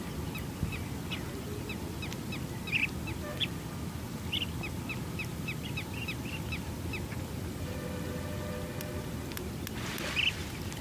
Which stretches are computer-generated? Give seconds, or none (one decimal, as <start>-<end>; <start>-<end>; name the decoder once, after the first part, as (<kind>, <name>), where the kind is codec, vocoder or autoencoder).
5.3-6.2 (vocoder, BigVGAN v2)